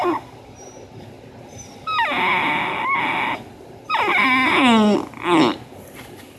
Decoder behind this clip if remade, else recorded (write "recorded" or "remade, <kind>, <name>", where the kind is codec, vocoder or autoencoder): recorded